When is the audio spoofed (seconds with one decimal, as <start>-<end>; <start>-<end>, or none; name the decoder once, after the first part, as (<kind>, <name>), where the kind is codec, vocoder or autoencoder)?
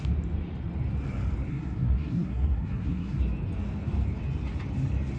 1.5-3.2 (codec, SNAC)